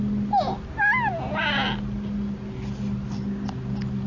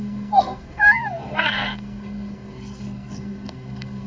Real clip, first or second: first